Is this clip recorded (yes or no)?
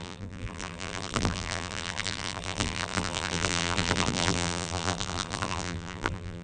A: no